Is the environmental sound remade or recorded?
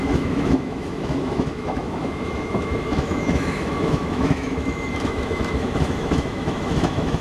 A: remade